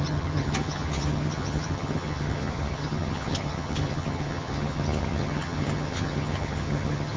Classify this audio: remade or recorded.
remade